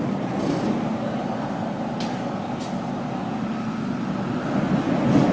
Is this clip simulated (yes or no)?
no